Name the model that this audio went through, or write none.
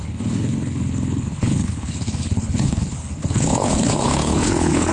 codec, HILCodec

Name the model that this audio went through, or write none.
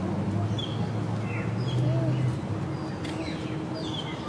none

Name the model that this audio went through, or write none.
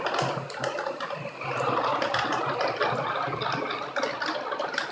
none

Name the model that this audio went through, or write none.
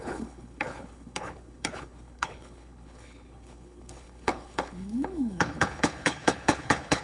codec, HILCodec